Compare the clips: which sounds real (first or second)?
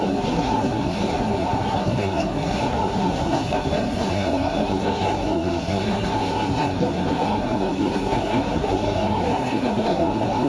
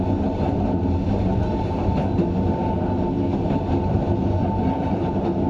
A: second